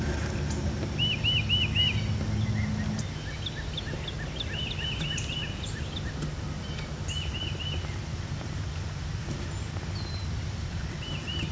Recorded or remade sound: recorded